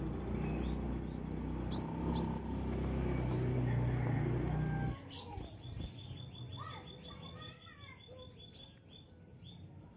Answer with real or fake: real